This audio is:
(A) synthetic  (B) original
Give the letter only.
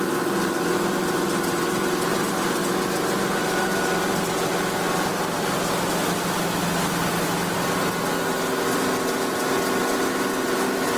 B